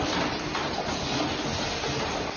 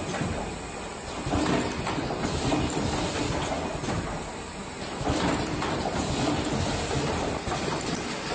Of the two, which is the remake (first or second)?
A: second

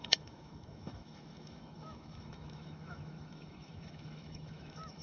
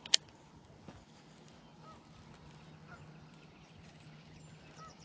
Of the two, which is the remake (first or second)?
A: first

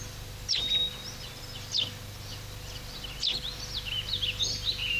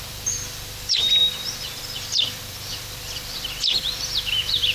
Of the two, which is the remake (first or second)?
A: second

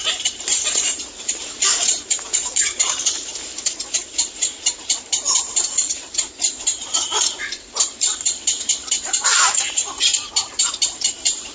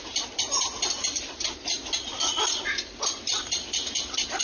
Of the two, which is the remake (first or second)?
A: first